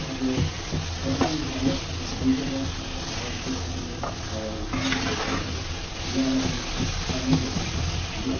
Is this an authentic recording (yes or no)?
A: yes